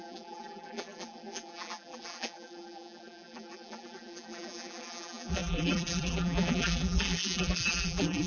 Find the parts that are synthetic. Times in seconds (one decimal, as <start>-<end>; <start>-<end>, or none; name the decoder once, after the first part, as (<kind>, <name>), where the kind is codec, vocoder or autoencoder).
0.0-8.3 (vocoder, BigVGAN v2)